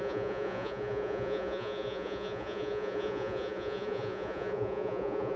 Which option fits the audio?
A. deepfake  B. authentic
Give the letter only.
A